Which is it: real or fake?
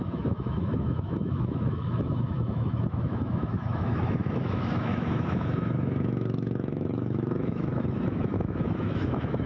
fake